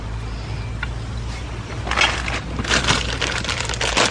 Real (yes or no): yes